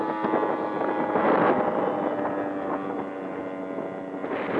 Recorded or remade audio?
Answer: recorded